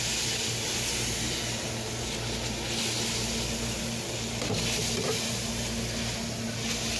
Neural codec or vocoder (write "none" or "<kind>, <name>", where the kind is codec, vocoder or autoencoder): none